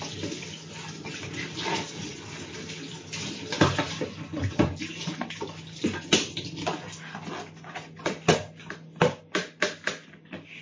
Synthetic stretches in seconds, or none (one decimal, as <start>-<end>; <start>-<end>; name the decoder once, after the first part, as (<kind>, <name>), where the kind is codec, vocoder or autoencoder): 4.3-5.0 (vocoder, BigVGAN v2)